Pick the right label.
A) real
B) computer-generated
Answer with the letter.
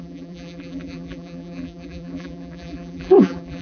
B